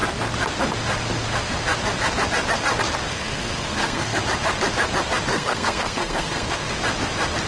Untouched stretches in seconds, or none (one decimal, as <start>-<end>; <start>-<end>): 0.0-3.1; 4.2-5.3; 6.7-7.5

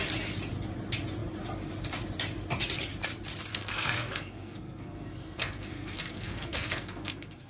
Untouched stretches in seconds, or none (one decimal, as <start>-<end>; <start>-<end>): 0.0-3.5

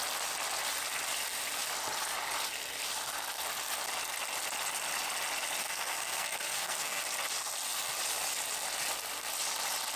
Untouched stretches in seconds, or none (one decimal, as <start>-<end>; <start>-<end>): 0.0-5.6; 7.0-10.0